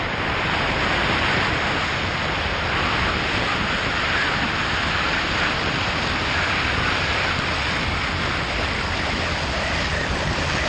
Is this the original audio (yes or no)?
yes